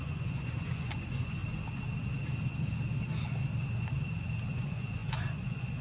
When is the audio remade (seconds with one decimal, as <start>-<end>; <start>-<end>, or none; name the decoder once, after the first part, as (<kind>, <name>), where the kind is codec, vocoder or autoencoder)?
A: 0.0-1.4 (vocoder, Vocos); 4.5-5.8